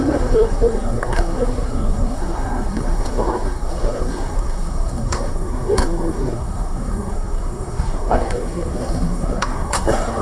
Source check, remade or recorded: remade